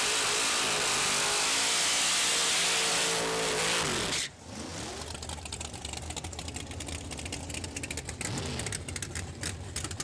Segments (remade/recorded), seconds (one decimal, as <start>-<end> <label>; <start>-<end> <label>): 0.0-10.0 recorded

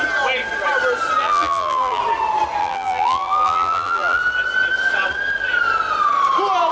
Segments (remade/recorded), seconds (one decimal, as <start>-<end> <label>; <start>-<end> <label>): 0.0-1.2 recorded; 1.2-2.0 remade; 2.0-2.6 recorded; 2.6-4.2 remade; 4.2-6.7 recorded

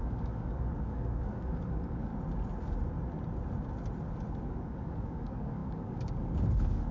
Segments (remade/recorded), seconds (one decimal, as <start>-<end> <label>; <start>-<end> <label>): 0.0-2.1 remade; 2.1-4.3 recorded; 4.3-6.9 remade

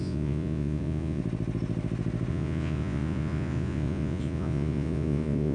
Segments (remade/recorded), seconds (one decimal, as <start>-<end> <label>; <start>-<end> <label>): 0.0-1.2 remade; 1.2-2.3 recorded; 2.3-5.5 remade

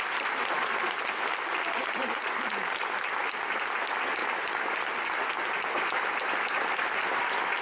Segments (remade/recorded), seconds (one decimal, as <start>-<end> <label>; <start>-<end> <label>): 0.0-7.6 recorded

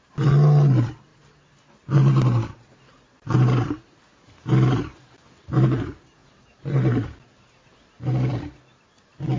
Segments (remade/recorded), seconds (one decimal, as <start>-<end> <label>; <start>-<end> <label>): 0.0-9.4 recorded

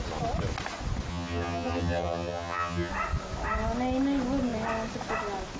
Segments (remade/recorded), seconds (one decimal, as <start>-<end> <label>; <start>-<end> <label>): 0.0-1.1 recorded; 1.1-2.9 remade; 2.9-5.6 recorded